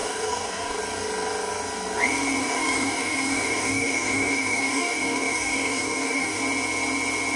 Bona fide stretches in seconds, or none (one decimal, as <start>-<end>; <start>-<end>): 0.8-2.4; 6.4-7.4